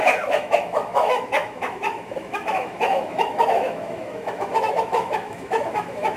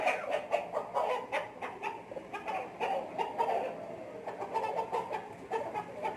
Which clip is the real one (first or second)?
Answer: second